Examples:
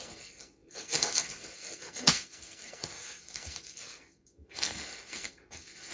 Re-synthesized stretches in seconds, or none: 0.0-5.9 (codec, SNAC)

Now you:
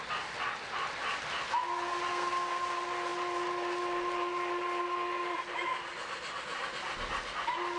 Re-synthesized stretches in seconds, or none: 2.1-2.6 (codec, SNAC)

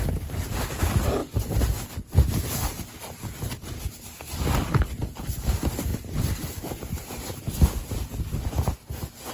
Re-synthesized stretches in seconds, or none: none

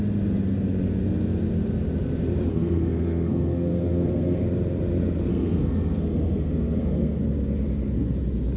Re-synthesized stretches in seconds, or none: 2.5-4.4 (codec, SNAC); 5.3-7.2

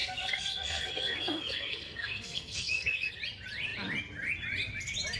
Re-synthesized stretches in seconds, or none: 0.0-3.1 (codec, SNAC)

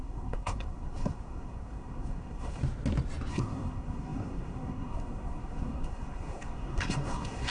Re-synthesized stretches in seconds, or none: 0.0-2.6 (codec, SNAC); 3.3-7.5